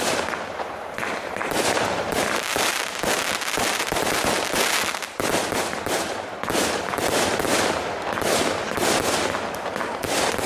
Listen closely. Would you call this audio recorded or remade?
remade